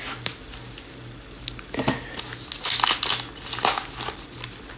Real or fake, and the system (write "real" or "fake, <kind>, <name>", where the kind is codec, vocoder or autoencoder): real